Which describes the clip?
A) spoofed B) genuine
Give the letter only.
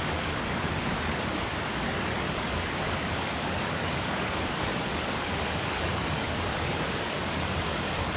A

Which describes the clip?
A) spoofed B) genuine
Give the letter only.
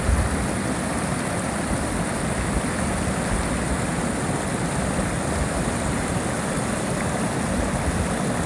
B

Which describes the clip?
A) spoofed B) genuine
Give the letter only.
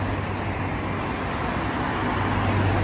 B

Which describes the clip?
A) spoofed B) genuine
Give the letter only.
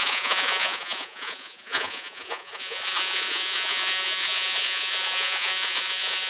A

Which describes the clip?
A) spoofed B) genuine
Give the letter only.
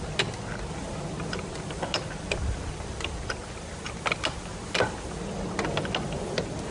B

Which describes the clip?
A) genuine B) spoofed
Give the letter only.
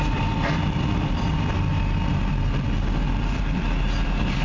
B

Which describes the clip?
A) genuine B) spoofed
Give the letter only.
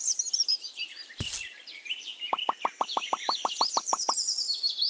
A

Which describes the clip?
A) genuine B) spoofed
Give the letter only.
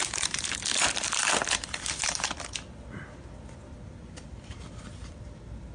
B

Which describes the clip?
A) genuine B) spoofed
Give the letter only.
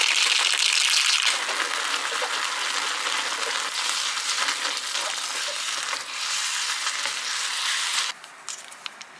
A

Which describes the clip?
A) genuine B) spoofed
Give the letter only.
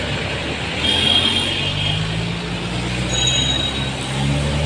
A